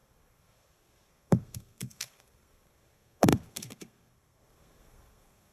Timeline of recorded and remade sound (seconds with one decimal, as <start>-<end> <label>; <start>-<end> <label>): 0.0-5.5 remade